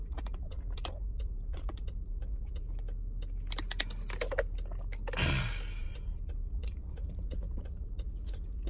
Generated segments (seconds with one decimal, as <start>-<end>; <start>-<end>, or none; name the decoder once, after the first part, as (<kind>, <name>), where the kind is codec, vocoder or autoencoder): 0.0-2.7 (vocoder, Vocos); 5.8-8.7